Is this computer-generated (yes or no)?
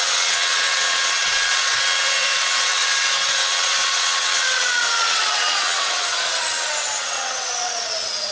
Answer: yes